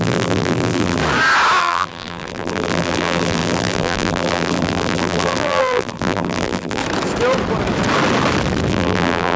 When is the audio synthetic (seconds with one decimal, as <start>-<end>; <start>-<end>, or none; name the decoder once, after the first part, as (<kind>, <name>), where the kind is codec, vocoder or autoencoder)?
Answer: 0.0-1.0 (vocoder, BigVGAN v2); 1.6-6.8; 8.7-9.4